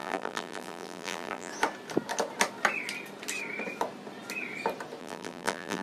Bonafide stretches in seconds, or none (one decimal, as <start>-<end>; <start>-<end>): 1.5-5.0